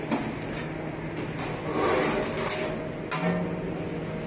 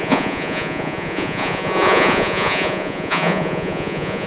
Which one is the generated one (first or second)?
second